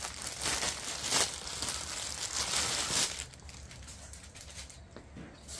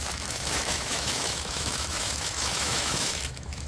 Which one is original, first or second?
first